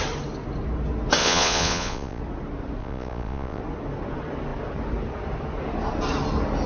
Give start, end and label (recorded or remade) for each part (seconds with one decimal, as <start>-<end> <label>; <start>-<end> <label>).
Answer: 0.0-1.2 recorded; 1.2-2.2 remade; 2.2-2.8 recorded; 2.8-3.6 remade; 3.6-6.7 recorded